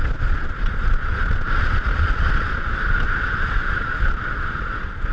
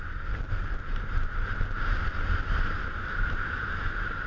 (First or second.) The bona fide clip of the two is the second